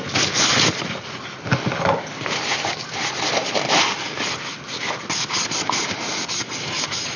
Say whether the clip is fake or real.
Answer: real